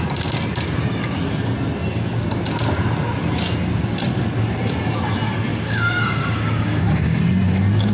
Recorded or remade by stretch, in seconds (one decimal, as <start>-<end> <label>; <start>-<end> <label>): 0.0-5.5 recorded; 5.5-7.2 remade; 7.2-7.9 recorded